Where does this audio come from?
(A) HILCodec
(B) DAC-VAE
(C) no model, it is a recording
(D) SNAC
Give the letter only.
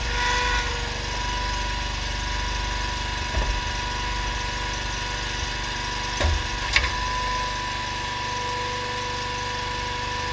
C